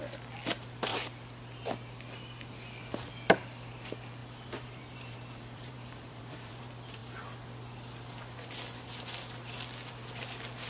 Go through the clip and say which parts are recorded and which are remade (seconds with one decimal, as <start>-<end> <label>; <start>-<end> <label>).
0.0-4.2 recorded; 4.2-6.6 remade; 6.6-10.7 recorded